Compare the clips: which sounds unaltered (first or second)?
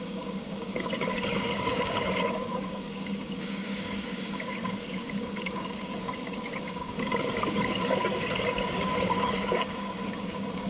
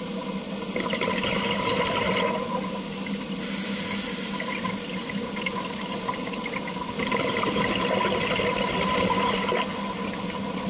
second